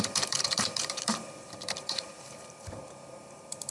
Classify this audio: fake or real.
fake